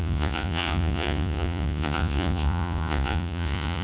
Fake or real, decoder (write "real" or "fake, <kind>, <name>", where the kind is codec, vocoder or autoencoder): fake, vocoder, Vocos